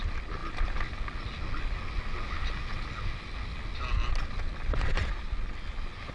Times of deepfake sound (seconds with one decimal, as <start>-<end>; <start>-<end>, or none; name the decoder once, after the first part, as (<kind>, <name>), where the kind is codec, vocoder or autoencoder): 0.0-0.4 (vocoder, BigVGAN v2); 4.1-6.1